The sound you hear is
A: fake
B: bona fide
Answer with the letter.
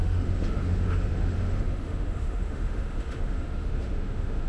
A